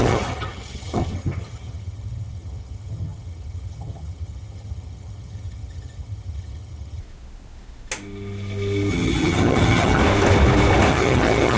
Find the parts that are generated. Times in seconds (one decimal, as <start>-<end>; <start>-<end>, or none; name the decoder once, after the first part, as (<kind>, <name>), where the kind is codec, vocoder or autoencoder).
0.0-7.0 (vocoder, HiFi-GAN); 8.9-10.0; 10.9-11.6